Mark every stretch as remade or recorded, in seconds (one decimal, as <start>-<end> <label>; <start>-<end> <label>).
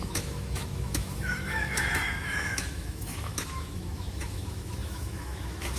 0.0-5.8 remade